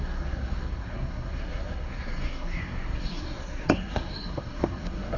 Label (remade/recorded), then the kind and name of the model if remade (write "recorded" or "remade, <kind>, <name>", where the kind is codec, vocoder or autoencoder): remade, codec, SNAC